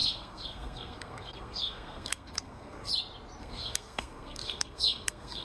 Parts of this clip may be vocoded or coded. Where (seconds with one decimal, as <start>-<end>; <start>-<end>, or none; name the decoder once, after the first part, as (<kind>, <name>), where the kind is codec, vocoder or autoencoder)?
0.0-2.9 (codec, SNAC); 3.4-5.4